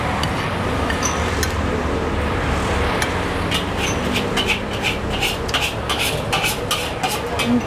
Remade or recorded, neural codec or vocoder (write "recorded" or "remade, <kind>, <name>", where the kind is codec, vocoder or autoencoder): recorded